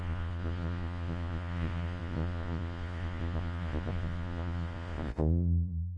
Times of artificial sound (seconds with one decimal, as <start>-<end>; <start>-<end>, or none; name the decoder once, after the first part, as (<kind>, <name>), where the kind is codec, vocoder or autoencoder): 0.0-6.0 (vocoder, Vocos)